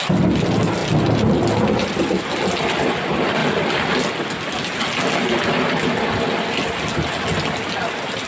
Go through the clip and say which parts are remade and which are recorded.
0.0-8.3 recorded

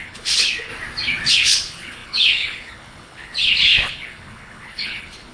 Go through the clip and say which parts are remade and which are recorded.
0.0-0.7 remade; 0.7-1.3 recorded; 1.3-5.3 remade

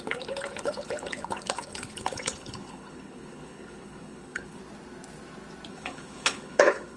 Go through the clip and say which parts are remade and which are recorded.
0.0-4.6 remade; 4.6-5.7 recorded; 5.7-7.0 remade

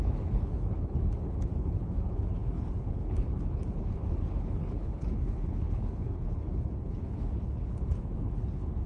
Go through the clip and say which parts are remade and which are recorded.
0.0-8.9 remade

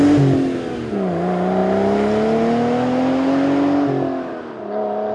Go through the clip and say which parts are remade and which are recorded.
0.0-5.1 recorded

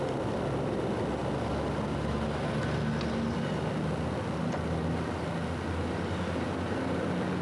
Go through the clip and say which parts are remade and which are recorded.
0.0-7.4 recorded

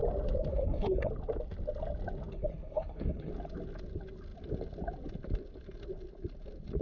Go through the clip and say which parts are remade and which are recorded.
0.0-0.5 recorded; 0.5-1.1 remade; 1.1-2.3 recorded; 2.3-3.3 remade; 3.3-6.8 recorded